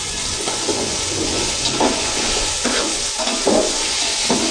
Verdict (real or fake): fake